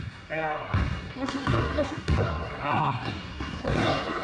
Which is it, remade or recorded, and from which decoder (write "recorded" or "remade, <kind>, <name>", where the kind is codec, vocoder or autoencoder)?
remade, codec, SNAC